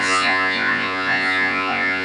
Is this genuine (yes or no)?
no